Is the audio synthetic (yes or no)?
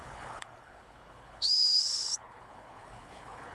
yes